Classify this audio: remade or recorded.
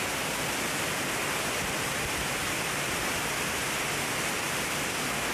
recorded